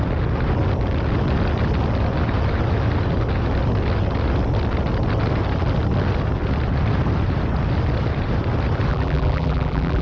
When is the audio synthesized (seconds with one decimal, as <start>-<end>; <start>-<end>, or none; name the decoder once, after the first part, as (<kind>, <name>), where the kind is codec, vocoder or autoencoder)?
8.9-10.0 (vocoder, BigVGAN v2)